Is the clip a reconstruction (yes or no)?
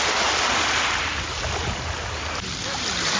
no